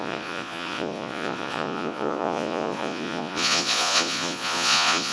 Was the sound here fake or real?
fake